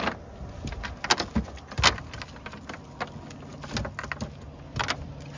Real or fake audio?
real